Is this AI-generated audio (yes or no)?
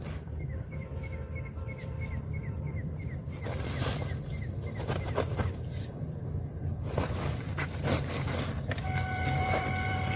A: yes